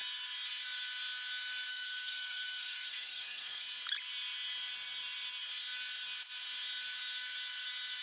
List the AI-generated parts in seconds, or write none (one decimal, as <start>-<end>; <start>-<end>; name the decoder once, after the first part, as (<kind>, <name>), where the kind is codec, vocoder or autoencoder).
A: 1.7-3.6 (codec, SNAC)